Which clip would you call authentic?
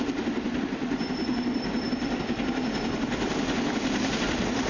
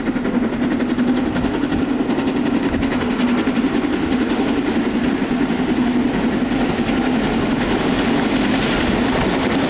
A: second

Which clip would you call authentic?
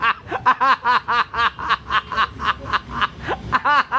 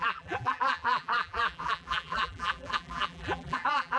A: first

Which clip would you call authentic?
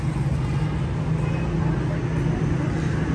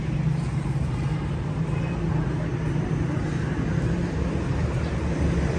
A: first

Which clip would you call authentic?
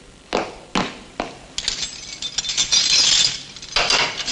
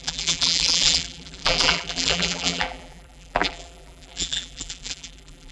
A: first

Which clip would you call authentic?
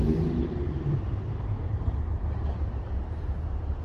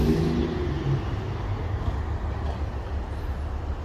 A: second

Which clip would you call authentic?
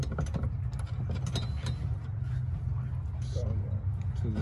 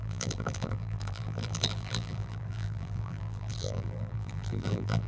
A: first